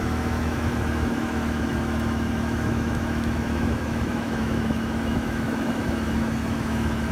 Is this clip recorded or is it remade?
remade